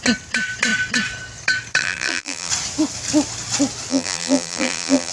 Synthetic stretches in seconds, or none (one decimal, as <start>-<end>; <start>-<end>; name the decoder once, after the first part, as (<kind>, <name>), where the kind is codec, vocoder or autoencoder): 1.8-2.5 (vocoder, BigVGAN v2); 3.9-5.1